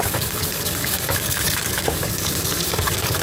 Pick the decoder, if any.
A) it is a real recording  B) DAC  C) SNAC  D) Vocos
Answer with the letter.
B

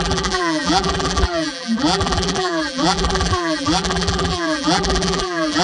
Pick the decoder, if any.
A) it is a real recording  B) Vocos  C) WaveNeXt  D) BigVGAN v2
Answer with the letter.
D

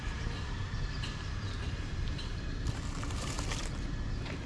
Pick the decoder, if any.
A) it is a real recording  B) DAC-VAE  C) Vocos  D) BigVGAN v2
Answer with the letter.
D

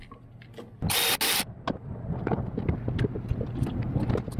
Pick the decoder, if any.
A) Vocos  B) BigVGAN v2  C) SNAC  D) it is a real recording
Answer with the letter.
D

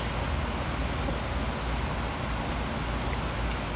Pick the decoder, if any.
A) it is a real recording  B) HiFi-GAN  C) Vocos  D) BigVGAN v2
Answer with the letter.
A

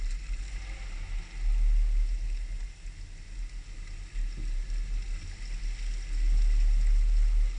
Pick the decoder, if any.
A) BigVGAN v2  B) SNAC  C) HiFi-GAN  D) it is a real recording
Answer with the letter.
D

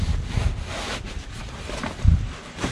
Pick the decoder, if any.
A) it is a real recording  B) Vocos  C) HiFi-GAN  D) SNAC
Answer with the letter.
A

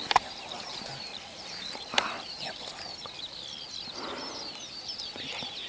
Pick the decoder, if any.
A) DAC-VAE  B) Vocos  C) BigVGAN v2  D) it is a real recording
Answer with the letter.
D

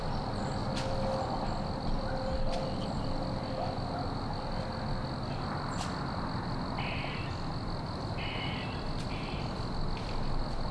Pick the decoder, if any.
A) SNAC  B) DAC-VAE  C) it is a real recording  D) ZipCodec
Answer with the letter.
C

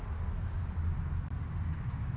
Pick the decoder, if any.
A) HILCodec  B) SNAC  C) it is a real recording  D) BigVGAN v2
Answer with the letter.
C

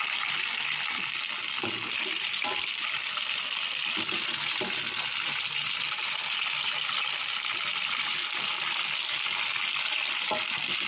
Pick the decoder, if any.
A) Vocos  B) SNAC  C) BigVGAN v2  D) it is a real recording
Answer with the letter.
D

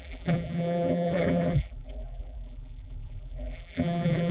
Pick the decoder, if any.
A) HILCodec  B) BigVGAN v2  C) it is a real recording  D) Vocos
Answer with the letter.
B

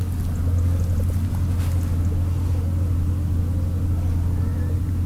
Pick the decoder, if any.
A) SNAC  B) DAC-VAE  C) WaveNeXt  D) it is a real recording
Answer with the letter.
D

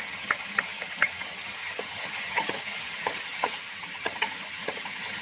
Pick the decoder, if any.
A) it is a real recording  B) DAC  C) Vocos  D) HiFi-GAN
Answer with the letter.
D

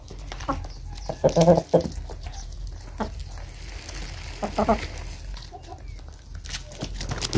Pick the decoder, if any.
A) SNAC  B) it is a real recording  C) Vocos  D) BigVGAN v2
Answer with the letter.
B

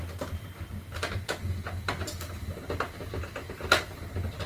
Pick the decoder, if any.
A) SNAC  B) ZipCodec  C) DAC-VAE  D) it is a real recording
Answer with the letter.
D